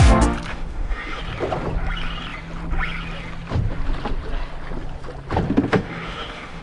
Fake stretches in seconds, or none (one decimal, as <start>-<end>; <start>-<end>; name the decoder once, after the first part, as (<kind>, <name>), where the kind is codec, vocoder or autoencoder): 0.5-1.2 (autoencoder, DAC-VAE); 5.7-6.6